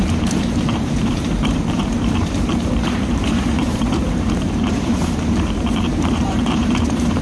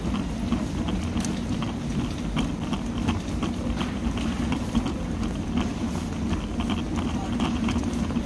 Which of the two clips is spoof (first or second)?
first